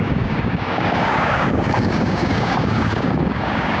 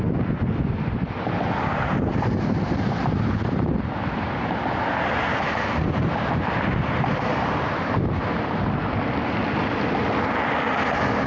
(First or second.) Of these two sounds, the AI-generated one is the first